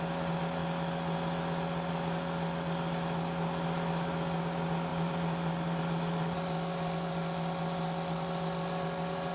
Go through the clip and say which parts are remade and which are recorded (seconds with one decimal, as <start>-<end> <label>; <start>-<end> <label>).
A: 0.0-4.9 recorded; 4.9-9.3 remade